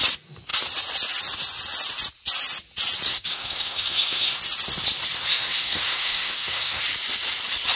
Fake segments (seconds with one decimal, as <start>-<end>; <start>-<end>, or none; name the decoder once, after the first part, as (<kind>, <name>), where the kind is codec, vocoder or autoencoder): 3.1-4.4 (codec, SNAC); 5.3-6.8